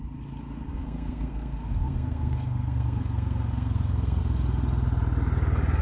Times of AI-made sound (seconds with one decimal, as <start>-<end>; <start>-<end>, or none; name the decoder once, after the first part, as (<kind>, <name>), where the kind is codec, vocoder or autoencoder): 0.7-4.2 (codec, SNAC)